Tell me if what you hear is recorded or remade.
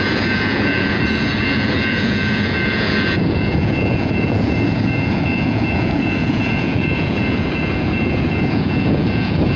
remade